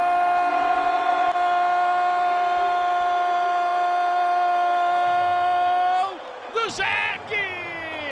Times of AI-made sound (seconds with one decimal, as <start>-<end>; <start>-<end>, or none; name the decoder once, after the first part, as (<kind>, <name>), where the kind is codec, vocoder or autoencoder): 0.5-1.3 (vocoder, WaveNeXt)